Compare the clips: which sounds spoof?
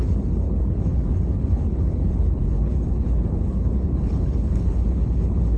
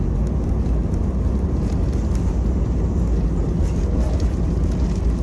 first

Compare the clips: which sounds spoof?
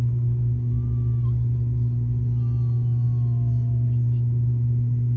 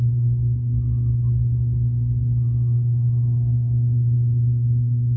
second